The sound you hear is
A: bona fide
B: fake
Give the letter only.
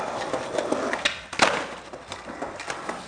A